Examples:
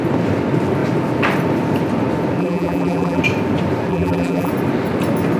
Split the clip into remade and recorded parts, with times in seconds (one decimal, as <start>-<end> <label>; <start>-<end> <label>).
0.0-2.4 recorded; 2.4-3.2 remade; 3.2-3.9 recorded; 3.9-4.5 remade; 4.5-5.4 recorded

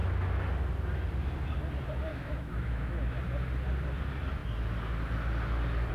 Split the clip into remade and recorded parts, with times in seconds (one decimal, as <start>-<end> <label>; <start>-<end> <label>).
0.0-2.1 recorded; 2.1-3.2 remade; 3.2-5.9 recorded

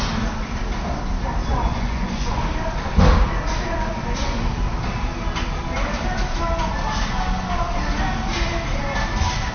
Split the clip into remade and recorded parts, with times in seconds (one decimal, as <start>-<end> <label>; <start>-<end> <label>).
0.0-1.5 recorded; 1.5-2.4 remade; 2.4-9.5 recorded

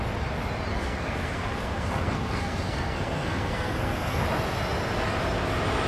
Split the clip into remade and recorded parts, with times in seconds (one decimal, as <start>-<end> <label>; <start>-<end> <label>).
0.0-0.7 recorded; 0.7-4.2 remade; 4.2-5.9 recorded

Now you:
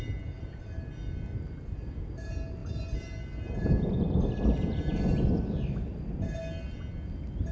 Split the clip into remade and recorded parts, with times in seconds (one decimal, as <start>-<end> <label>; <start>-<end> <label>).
0.0-7.5 recorded